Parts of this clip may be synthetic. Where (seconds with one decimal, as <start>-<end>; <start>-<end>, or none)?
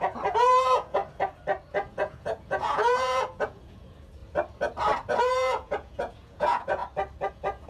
0.0-1.0; 1.7-4.2; 5.2-6.8; 7.3-7.7